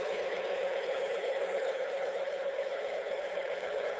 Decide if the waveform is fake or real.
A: fake